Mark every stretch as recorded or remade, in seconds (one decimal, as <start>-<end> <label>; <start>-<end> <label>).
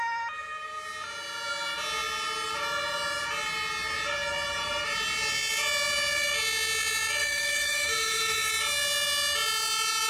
0.0-7.2 recorded; 7.2-8.5 remade; 8.5-10.1 recorded